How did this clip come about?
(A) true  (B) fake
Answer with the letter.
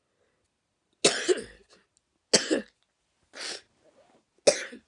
A